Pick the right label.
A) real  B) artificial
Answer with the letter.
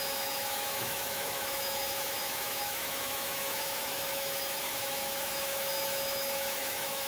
B